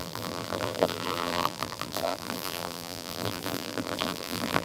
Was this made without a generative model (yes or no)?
no